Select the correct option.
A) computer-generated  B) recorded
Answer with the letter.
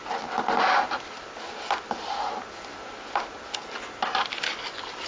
B